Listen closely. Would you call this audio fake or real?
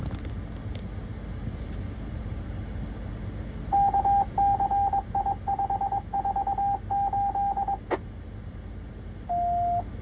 real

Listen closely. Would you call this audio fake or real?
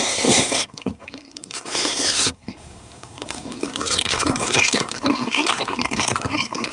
fake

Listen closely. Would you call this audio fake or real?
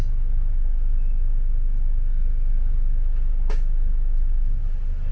real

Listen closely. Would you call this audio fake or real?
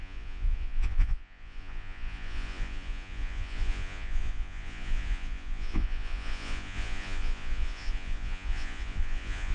fake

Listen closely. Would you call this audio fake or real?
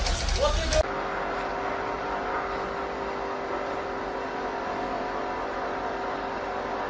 real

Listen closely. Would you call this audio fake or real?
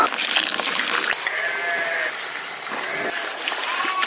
real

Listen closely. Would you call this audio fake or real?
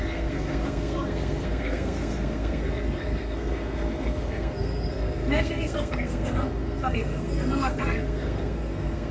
fake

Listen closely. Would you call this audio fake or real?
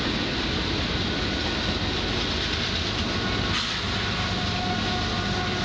real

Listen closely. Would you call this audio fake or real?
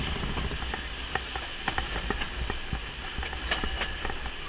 real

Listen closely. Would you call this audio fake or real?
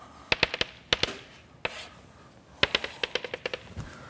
real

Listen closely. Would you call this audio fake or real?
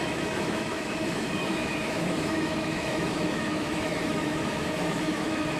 fake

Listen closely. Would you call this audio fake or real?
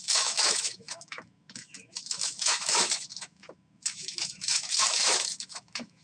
fake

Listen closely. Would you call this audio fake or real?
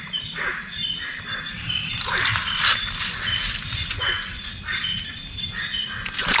real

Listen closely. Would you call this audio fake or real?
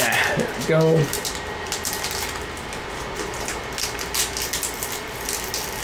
real